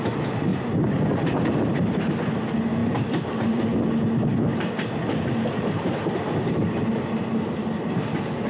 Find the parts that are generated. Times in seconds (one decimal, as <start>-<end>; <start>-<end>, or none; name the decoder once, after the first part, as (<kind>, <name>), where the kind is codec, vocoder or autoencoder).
0.5-2.3 (vocoder, BigVGAN v2); 2.8-3.4